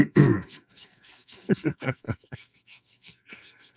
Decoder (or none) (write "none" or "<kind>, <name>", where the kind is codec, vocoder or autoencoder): codec, SNAC